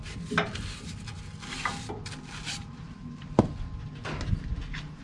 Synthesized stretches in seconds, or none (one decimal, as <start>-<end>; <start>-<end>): 2.6-3.4